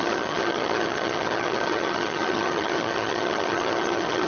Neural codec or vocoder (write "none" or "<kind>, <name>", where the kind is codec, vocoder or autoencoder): vocoder, HiFi-GAN